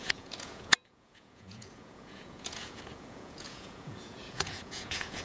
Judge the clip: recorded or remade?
remade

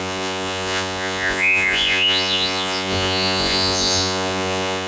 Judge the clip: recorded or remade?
remade